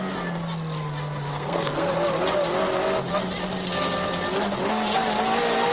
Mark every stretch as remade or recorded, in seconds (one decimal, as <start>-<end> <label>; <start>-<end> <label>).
0.0-1.3 recorded; 1.3-1.9 remade; 1.9-5.7 recorded